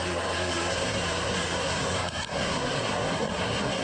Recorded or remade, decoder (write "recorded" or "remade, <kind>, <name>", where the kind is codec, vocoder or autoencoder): remade, codec, SNAC